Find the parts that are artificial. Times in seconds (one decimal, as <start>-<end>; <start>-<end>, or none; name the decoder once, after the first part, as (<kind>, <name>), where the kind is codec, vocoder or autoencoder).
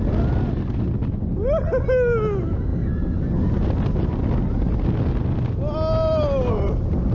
none